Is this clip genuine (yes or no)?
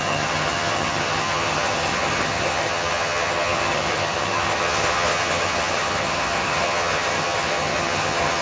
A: no